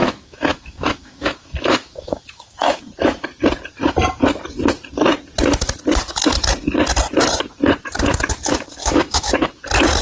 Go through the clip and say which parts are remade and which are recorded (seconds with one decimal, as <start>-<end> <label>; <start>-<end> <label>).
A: 0.0-2.8 remade; 2.8-8.8 recorded; 8.8-9.6 remade; 9.6-10.0 recorded